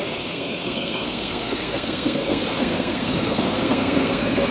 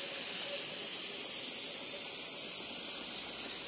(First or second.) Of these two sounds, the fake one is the first